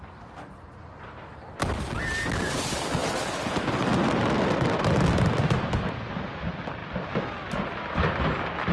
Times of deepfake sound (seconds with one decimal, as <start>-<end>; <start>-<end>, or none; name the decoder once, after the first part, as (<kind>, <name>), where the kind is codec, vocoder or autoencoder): none

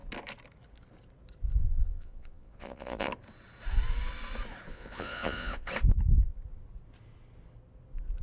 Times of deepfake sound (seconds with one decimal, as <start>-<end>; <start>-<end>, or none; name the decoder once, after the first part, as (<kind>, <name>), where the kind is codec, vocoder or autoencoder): 1.6-3.1 (vocoder, Vocos); 4.7-5.7

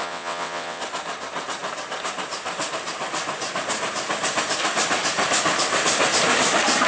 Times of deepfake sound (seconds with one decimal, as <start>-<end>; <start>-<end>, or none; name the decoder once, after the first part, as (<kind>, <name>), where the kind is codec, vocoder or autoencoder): 0.0-0.8 (vocoder, WaveNeXt)

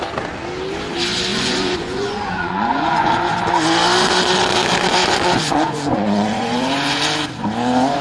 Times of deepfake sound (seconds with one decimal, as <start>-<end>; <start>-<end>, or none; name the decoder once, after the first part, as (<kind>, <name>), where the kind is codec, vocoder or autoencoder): 1.3-3.1 (vocoder, Vocos); 5.0-7.0

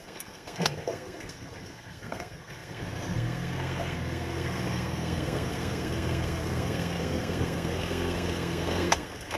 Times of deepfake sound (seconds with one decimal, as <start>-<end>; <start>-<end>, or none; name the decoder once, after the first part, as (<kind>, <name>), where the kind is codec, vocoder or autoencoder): 0.0-9.4 (codec, SNAC)

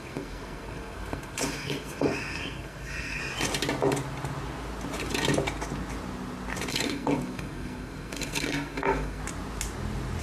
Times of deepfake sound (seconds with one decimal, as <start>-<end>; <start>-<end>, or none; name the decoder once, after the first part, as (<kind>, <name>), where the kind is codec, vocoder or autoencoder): 0.0-3.2 (codec, SNAC); 6.7-9.2